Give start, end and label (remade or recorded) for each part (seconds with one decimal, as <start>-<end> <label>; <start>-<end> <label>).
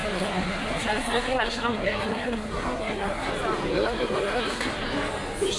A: 0.0-3.3 remade; 3.3-3.7 recorded; 3.7-4.7 remade; 4.7-5.6 recorded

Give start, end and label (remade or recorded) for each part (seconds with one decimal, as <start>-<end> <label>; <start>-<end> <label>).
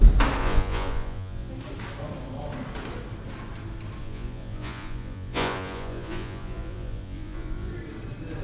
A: 0.0-0.4 recorded; 0.4-1.5 remade; 1.5-4.0 recorded; 4.0-7.7 remade; 7.7-8.4 recorded